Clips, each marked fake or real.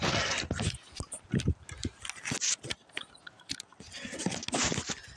real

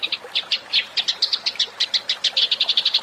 real